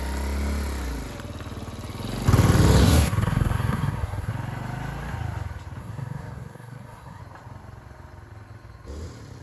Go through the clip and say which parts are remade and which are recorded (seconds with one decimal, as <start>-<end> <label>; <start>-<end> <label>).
0.0-2.8 recorded; 2.8-4.3 remade; 4.3-5.8 recorded; 5.8-7.2 remade; 7.2-9.4 recorded